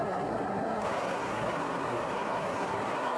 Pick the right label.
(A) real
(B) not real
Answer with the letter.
B